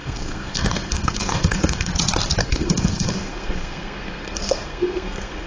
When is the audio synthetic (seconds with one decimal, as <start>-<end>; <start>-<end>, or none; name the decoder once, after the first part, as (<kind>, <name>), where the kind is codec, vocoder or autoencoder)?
0.0-1.9 (codec, SNAC); 2.4-5.5